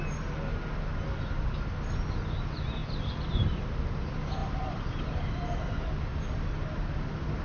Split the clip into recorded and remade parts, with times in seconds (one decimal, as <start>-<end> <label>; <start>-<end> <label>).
0.0-2.8 recorded; 2.8-3.6 remade; 3.6-4.4 recorded; 4.4-5.3 remade; 5.3-7.4 recorded